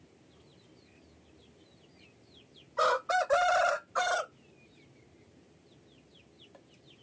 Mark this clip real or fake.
real